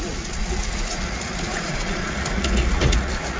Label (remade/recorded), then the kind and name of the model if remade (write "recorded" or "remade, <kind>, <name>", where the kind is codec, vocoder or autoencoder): remade, vocoder, Vocos